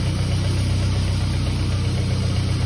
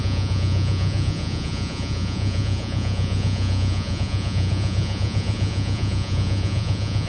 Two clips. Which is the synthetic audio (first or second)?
second